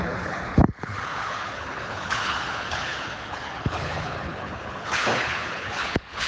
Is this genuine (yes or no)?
no